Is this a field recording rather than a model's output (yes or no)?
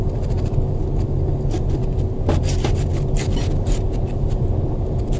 yes